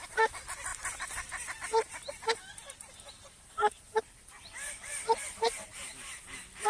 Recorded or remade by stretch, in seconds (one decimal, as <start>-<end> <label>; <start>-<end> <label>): 0.0-2.5 recorded; 2.5-4.0 remade; 4.0-6.7 recorded